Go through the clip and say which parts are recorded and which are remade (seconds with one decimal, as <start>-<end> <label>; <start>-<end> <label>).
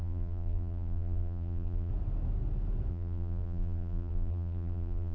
0.0-1.9 remade; 1.9-2.9 recorded; 2.9-5.1 remade